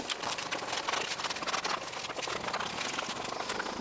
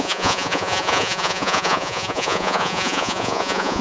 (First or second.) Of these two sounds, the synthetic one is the second